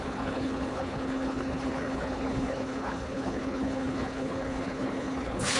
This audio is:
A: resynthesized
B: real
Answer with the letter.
A